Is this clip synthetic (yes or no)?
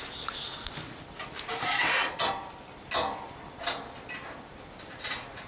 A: no